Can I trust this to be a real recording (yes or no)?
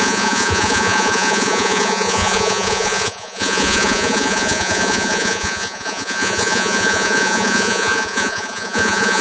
no